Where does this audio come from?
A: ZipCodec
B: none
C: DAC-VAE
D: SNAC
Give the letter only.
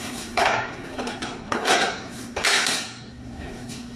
D